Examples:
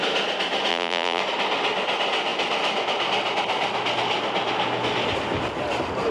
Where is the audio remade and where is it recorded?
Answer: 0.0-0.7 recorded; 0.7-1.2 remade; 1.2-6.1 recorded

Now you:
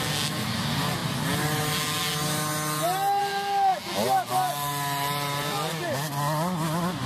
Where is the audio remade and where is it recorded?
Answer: 0.0-7.1 recorded